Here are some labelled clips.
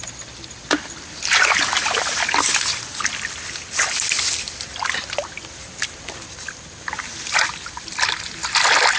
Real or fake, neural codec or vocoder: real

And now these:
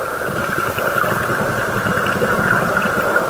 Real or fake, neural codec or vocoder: real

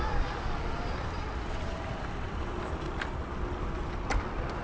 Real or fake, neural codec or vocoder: real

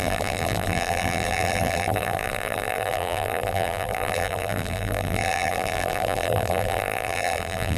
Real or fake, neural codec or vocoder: fake, vocoder, BigVGAN v2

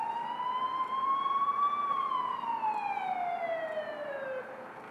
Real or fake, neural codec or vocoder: real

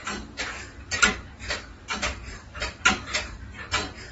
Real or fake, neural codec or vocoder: fake, vocoder, BigVGAN v2